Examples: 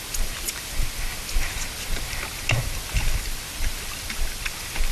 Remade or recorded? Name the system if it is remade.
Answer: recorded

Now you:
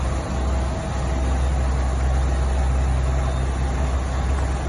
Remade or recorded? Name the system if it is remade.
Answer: recorded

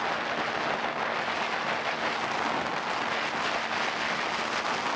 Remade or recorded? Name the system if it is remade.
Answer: recorded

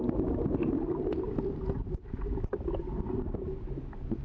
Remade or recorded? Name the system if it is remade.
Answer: recorded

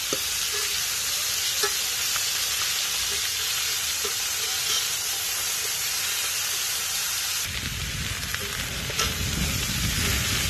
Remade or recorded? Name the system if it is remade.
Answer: recorded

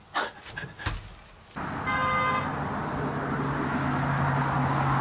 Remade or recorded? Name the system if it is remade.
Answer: recorded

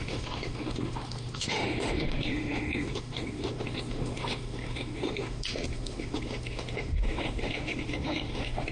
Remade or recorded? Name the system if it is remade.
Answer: remade, autoencoder, DAC-VAE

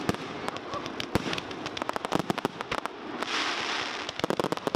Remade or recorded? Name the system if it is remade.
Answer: recorded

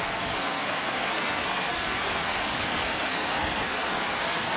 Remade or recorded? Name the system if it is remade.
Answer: remade, codec, SNAC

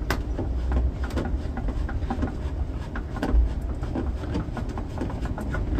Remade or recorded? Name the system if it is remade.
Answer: recorded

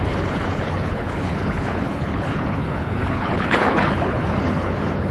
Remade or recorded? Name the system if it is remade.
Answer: remade, codec, HILCodec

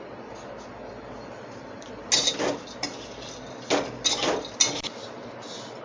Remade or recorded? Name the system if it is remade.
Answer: recorded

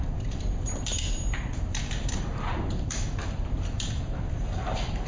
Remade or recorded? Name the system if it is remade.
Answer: remade, vocoder, BigVGAN v2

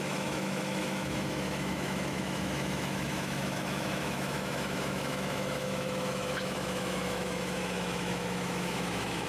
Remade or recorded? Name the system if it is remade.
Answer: remade, autoencoder, DAC-VAE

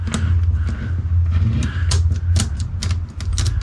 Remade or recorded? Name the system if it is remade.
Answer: recorded